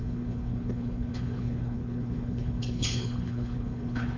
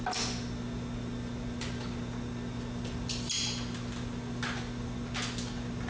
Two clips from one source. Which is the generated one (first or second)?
first